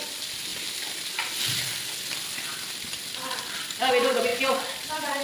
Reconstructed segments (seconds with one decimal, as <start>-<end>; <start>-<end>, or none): none